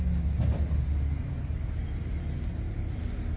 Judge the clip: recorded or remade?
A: recorded